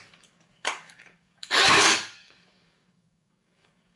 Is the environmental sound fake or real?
fake